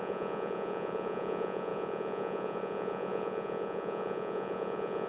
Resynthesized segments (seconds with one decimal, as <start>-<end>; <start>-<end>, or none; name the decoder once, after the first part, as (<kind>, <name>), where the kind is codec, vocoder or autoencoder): 0.0-5.1 (vocoder, Vocos)